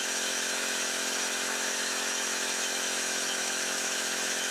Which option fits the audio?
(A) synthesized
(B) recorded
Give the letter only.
A